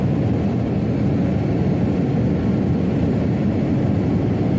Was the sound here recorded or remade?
recorded